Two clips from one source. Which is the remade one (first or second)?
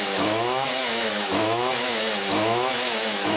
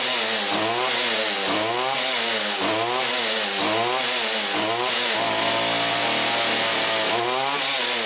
first